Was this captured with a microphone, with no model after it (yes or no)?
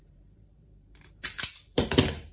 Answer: no